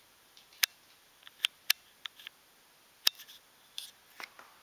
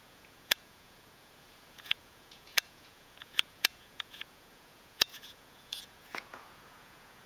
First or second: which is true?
first